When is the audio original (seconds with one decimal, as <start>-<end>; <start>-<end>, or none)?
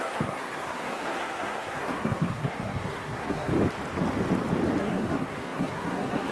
3.5-4.8